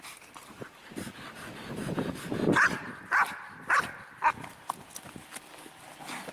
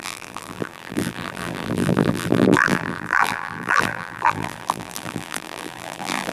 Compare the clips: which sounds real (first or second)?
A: first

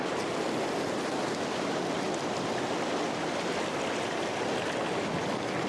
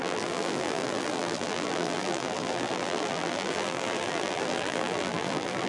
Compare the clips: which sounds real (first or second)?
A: first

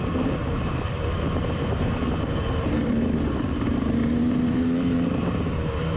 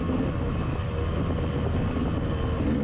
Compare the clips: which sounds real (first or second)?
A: second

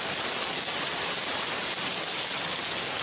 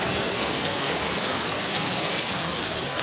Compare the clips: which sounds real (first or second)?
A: first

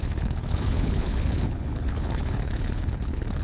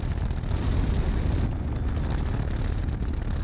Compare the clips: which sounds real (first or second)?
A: second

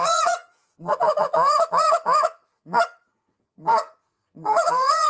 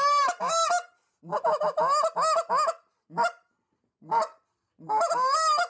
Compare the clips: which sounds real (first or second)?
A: second